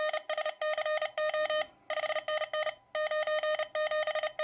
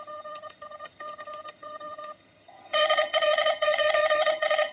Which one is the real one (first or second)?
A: first